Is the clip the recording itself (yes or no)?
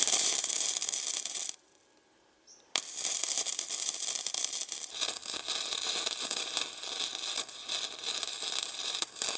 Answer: yes